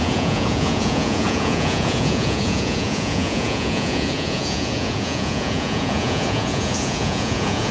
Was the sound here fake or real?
fake